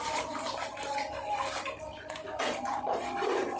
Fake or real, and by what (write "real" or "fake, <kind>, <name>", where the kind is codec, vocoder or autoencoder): real